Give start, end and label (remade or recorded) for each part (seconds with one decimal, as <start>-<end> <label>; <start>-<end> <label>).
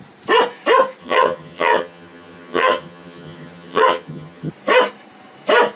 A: 0.0-1.0 recorded; 1.0-4.5 remade; 4.5-5.8 recorded